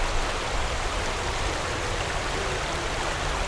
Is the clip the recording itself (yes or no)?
yes